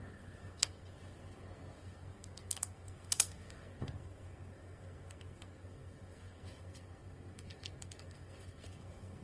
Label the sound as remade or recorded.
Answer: remade